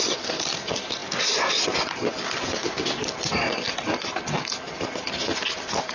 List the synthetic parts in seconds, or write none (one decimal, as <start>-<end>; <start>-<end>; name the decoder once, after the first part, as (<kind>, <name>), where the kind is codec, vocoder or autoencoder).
none